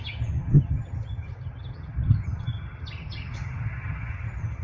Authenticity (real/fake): fake